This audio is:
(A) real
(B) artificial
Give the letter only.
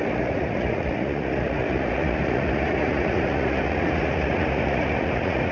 B